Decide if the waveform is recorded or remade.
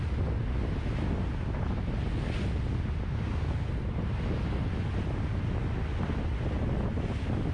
recorded